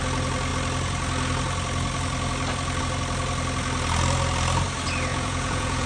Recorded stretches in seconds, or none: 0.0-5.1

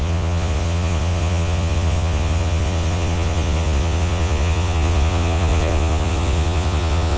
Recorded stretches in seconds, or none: none

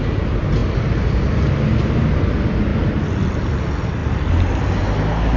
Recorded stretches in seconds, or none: 0.0-5.4

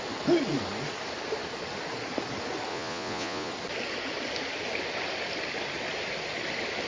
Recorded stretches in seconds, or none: 0.0-2.7; 3.5-6.9

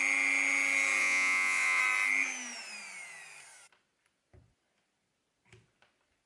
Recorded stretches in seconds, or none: 0.0-1.0; 1.8-6.3